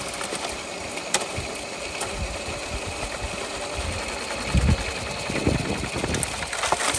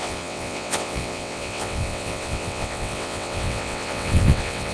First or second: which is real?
first